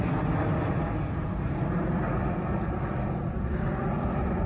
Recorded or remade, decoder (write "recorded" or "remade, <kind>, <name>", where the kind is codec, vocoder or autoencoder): recorded